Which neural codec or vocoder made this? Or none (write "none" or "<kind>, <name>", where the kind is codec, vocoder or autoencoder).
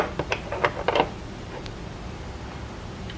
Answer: vocoder, BigVGAN v2